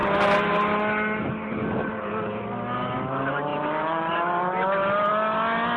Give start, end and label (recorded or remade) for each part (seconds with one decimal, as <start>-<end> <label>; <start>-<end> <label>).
0.0-5.8 recorded